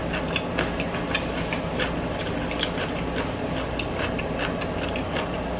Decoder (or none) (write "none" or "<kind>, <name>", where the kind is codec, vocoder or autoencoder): none